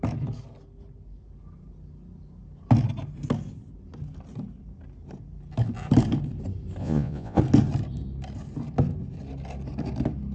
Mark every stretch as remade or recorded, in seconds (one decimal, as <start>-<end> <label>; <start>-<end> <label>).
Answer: 0.0-6.8 recorded; 6.8-7.4 remade; 7.4-10.3 recorded